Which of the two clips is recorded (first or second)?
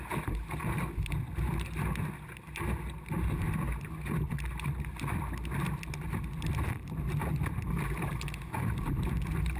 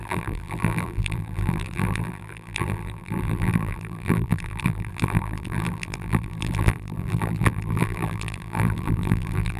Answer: first